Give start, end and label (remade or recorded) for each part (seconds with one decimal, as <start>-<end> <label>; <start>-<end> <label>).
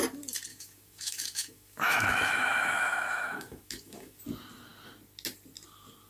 0.0-0.5 recorded; 0.5-4.2 remade; 4.2-6.1 recorded